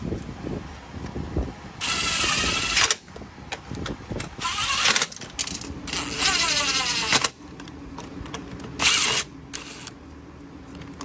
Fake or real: real